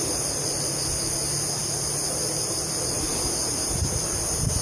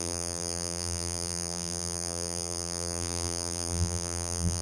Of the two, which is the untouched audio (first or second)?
first